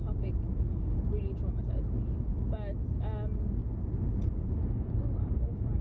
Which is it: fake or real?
real